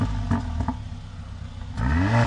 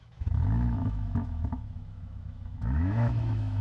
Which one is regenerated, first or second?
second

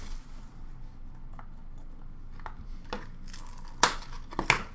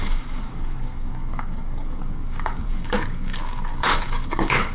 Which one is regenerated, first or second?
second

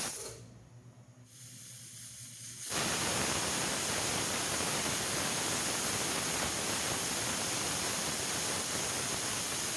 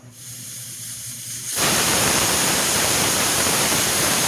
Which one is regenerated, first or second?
second